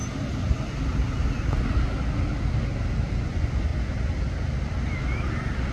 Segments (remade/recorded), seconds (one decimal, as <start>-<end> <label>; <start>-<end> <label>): 0.0-3.1 recorded; 3.1-3.7 remade; 3.7-5.7 recorded